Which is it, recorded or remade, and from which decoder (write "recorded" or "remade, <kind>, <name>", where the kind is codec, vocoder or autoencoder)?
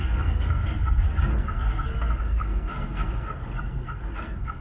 remade, codec, SNAC